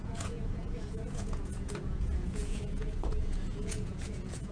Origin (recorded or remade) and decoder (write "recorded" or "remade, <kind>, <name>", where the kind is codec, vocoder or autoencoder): remade, vocoder, Vocos